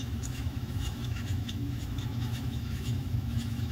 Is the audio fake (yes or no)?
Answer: yes